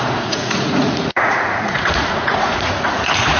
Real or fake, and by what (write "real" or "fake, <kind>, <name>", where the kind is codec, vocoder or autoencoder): fake, vocoder, Vocos